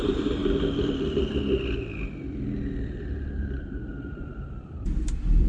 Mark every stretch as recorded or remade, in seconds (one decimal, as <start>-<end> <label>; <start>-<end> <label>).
0.0-0.4 remade; 0.4-3.7 recorded; 3.7-5.5 remade